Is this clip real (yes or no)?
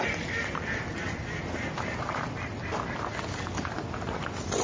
yes